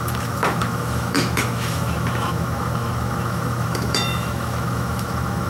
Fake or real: fake